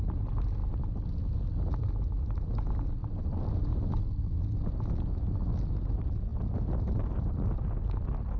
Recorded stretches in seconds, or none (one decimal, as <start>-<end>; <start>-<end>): 0.0-8.4